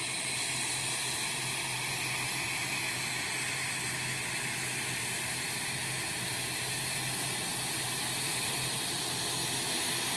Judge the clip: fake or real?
real